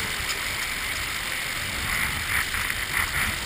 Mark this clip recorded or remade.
recorded